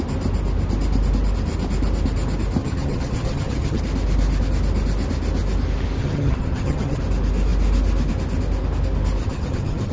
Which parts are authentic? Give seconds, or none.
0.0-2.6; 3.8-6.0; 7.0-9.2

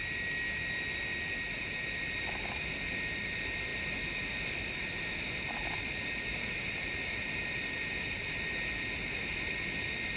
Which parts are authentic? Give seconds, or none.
0.0-10.2

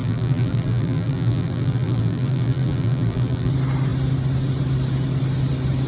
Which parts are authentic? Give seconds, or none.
3.5-5.9

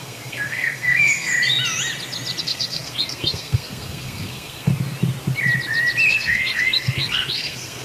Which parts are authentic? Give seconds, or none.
1.3-2.4; 4.7-6.1

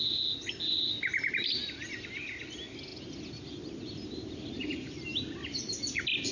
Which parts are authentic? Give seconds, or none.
0.0-6.3

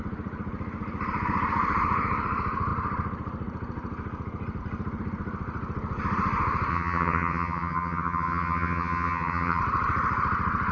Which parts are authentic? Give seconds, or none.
0.0-6.7; 9.6-10.7